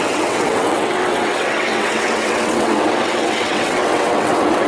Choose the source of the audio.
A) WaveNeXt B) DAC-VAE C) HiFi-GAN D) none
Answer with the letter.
A